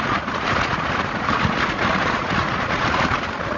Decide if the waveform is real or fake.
fake